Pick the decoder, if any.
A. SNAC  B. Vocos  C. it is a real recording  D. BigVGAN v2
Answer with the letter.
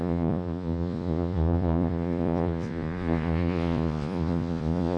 B